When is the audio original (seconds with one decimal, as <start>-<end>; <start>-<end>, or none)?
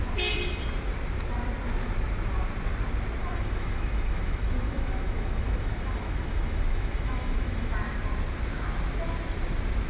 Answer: 0.0-3.2; 7.7-9.9